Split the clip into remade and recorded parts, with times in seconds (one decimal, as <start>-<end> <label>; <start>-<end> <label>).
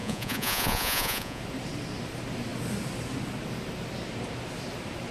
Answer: 0.0-1.4 remade; 1.4-5.1 recorded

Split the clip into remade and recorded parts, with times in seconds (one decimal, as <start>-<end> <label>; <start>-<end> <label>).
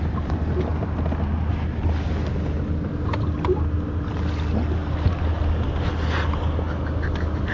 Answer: 0.0-7.5 recorded